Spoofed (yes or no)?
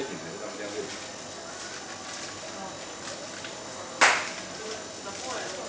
no